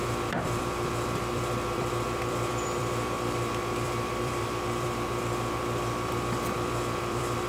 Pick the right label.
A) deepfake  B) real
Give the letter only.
A